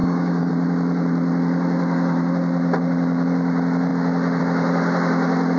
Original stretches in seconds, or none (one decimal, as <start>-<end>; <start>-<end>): 0.5-5.6